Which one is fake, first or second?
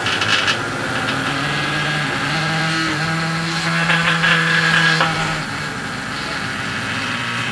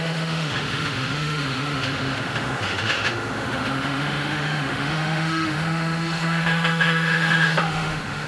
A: second